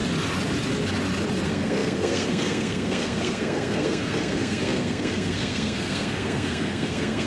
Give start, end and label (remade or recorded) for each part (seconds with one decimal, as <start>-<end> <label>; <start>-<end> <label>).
0.0-1.4 recorded; 1.4-7.3 remade